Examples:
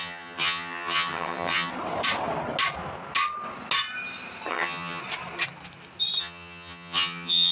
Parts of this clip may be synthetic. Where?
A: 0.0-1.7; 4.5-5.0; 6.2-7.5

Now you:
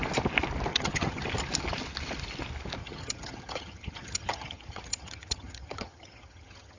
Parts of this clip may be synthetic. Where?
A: 0.7-1.2; 2.8-6.8

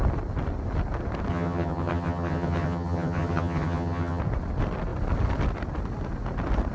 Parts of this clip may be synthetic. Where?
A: 1.3-4.2

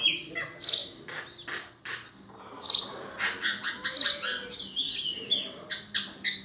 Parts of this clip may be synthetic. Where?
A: none

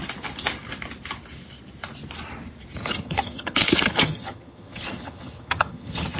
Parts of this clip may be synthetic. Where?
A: 2.8-6.2

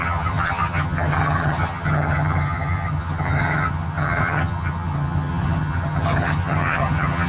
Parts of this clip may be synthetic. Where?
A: 0.0-7.3

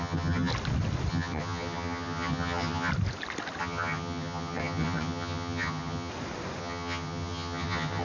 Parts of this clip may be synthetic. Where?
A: 0.0-0.5; 1.1-2.9; 3.6-6.1; 6.6-8.0

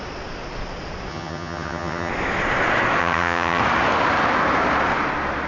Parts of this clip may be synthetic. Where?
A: 1.1-2.1; 3.0-3.6